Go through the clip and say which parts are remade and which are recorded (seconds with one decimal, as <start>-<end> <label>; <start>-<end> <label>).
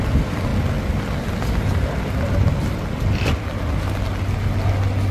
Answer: 0.0-5.1 recorded